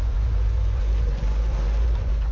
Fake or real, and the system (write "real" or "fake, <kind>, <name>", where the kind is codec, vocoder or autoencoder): fake, vocoder, Vocos